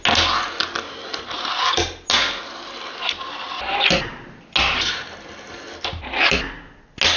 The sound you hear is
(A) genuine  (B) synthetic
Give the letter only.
A